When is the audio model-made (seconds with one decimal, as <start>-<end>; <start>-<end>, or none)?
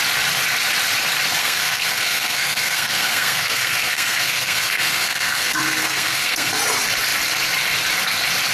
1.4-6.5